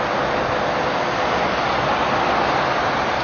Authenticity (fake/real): real